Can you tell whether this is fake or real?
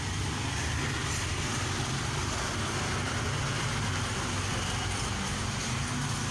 real